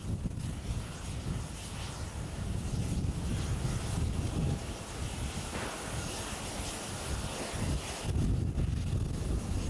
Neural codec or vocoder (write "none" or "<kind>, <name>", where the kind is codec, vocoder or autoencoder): none